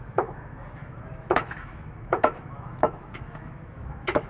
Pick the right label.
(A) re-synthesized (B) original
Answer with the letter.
A